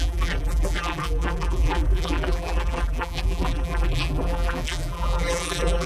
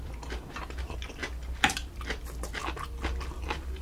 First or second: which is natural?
second